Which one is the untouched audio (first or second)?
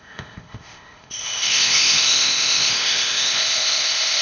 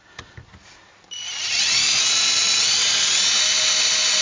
second